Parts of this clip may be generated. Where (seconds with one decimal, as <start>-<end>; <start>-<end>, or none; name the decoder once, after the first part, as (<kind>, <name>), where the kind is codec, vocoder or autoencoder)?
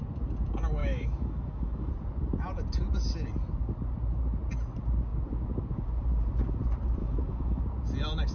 0.8-1.9 (autoencoder, DAC-VAE); 7.0-7.6